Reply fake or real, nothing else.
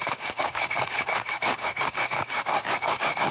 fake